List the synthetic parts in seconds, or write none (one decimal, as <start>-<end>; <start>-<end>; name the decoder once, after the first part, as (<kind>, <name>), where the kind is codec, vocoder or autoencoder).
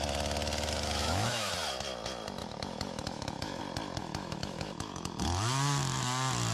1.0-1.5 (autoencoder, DAC-VAE); 2.4-3.6; 4.0-5.2